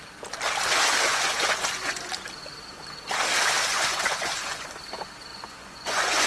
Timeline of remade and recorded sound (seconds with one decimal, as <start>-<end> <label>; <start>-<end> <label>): 0.0-1.1 recorded; 1.1-2.0 remade; 2.0-3.7 recorded; 3.7-4.7 remade; 4.7-5.3 recorded; 5.3-6.3 remade